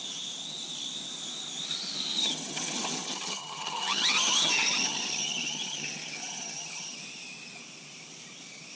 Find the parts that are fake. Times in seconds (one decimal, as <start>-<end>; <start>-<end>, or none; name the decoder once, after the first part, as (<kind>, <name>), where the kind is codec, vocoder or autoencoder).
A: 2.2-7.0 (vocoder, HiFi-GAN)